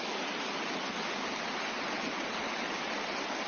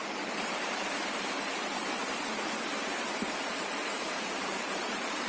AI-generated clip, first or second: second